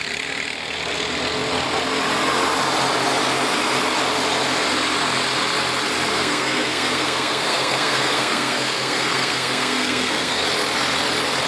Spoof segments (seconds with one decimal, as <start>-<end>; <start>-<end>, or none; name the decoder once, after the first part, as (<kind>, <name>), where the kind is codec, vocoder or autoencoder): 6.1-10.4 (codec, SNAC)